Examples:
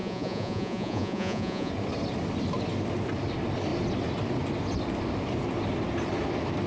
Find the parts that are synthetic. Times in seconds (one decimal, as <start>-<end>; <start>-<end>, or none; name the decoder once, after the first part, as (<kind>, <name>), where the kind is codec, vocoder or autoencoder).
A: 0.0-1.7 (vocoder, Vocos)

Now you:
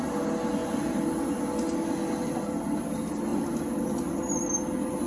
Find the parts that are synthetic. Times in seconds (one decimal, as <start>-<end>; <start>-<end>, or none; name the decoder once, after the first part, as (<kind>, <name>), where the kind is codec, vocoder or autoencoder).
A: none

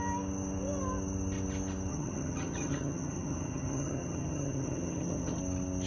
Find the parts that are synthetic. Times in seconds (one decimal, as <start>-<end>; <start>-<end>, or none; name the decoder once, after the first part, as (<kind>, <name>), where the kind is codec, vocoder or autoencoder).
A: 1.9-5.4 (vocoder, HiFi-GAN)

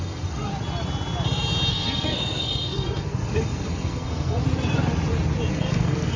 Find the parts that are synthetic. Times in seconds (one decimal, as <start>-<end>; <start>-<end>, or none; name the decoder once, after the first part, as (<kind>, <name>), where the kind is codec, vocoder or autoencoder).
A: 0.0-0.5 (codec, SNAC); 1.7-4.4; 5.5-6.2